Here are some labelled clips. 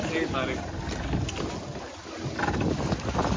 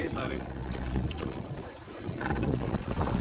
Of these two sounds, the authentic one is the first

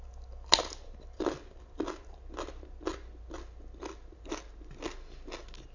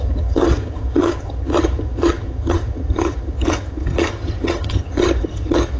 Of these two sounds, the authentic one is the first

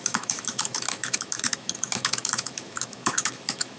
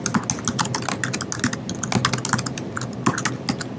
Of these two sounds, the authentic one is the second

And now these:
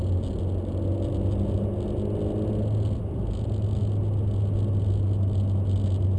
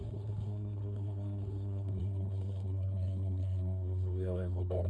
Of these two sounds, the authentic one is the first